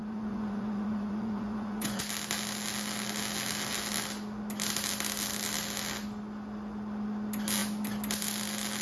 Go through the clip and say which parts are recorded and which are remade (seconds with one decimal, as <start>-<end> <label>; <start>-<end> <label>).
0.0-2.0 remade; 2.0-8.8 recorded